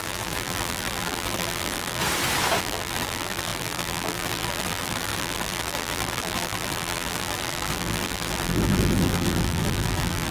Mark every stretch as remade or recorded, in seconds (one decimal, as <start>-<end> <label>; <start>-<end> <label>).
0.0-2.0 remade; 2.0-2.6 recorded; 2.6-10.3 remade